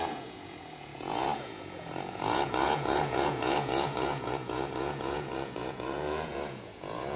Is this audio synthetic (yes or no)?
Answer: yes